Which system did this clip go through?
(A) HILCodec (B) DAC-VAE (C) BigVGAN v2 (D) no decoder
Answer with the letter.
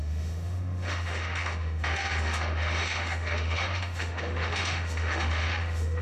B